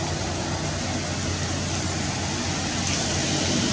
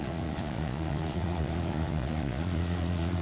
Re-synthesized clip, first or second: second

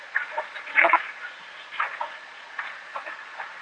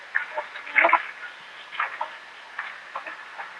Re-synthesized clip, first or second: first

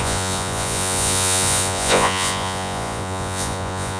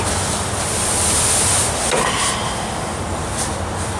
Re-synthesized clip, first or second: first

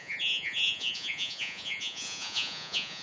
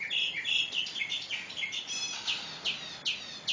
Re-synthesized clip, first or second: first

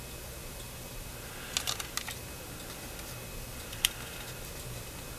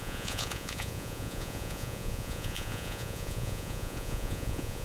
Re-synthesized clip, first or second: second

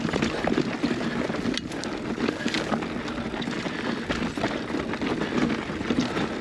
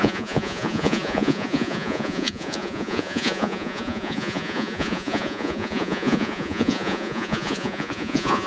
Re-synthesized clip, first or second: second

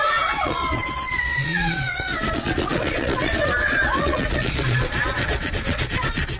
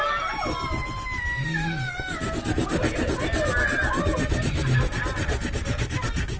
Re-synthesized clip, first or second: first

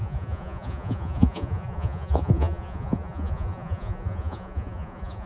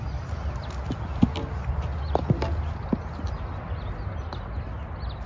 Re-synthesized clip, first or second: first